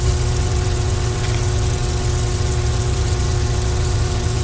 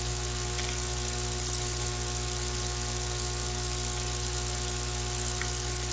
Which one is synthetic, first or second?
first